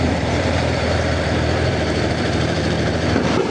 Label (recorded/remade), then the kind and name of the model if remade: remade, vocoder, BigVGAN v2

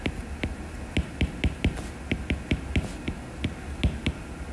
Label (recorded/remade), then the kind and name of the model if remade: recorded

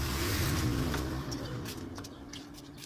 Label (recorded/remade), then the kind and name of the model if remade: recorded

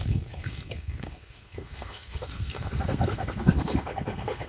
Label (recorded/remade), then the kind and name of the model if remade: remade, codec, SNAC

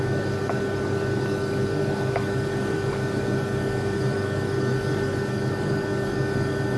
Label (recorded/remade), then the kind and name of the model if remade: remade, codec, DAC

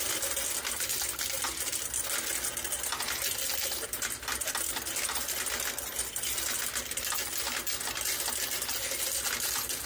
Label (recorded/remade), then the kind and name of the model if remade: recorded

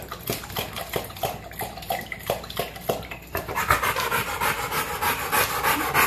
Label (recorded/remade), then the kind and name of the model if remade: recorded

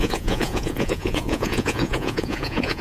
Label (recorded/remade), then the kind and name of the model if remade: remade, vocoder, Vocos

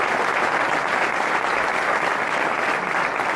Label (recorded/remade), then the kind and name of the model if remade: recorded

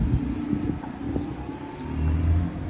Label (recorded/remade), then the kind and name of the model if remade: recorded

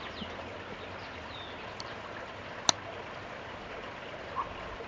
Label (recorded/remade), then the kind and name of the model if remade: recorded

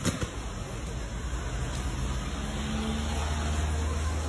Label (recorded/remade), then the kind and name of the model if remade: recorded